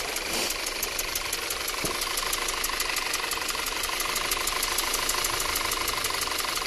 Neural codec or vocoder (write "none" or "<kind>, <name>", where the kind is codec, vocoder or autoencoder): none